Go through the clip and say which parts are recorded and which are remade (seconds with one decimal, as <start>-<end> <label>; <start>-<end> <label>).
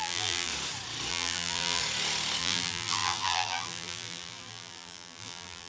0.0-0.5 remade; 0.5-1.1 recorded; 1.1-1.8 remade; 1.8-2.4 recorded; 2.4-5.7 remade